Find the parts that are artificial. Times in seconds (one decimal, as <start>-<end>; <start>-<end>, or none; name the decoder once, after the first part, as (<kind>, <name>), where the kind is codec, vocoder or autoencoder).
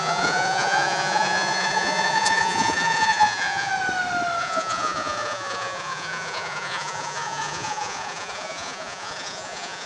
0.0-3.7 (vocoder, Vocos); 4.4-9.9